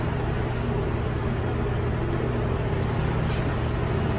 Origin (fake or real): real